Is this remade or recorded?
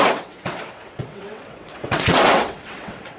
remade